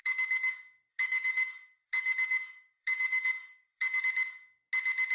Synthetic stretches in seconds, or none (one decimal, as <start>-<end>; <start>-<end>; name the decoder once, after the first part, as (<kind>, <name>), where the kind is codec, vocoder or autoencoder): 0.0-0.5 (codec, DAC); 0.9-4.0